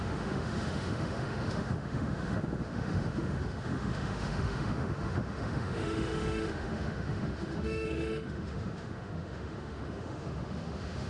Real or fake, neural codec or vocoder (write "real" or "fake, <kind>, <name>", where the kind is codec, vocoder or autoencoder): fake, autoencoder, DAC-VAE